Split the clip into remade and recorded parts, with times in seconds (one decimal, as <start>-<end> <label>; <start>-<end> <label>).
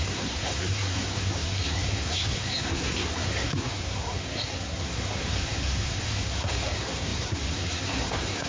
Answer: 0.0-8.5 remade